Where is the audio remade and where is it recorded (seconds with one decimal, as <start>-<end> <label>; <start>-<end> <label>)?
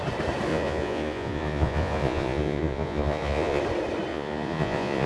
0.0-0.5 recorded; 0.5-3.6 remade; 3.6-4.1 recorded; 4.1-5.1 remade